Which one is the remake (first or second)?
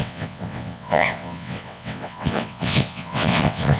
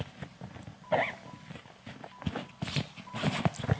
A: first